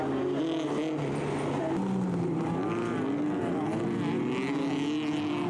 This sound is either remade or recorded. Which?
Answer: recorded